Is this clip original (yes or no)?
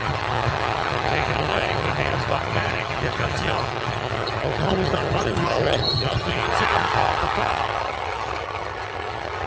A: no